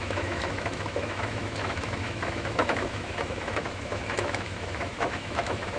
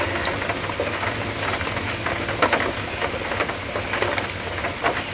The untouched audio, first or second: second